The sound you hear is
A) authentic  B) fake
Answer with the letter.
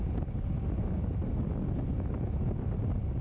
A